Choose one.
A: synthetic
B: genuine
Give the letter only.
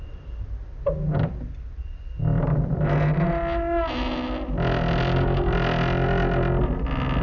B